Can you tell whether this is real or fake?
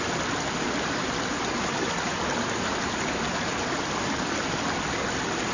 real